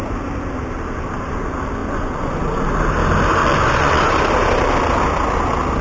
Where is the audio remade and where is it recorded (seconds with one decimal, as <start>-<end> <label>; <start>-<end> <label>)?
0.0-1.8 recorded; 1.8-2.4 remade; 2.4-3.4 recorded; 3.4-4.1 remade; 4.1-5.8 recorded